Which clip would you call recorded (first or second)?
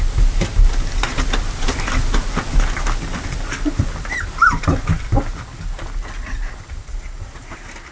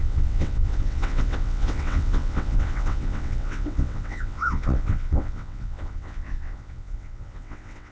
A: first